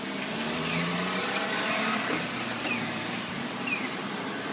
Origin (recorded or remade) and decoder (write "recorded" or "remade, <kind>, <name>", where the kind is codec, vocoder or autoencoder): remade, vocoder, BigVGAN v2